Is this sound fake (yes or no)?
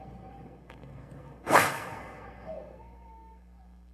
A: yes